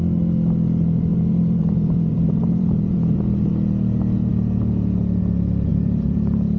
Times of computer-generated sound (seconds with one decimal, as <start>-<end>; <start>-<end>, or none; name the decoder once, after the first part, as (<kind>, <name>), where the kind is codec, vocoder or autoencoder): 1.1-3.5 (vocoder, BigVGAN v2); 5.7-6.6